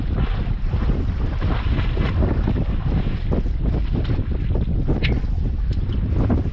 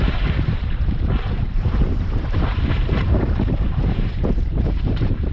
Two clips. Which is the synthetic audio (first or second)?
second